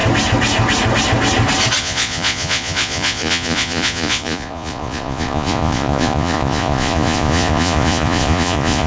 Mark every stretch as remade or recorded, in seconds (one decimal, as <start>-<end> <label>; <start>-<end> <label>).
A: 0.0-1.8 recorded; 1.8-8.9 remade